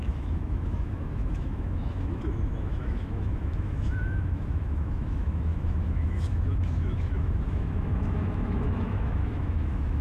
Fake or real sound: fake